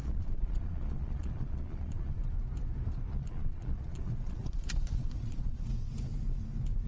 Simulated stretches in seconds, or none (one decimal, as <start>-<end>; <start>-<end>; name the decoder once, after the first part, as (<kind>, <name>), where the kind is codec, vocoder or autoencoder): 0.0-2.2 (vocoder, Vocos); 3.1-5.7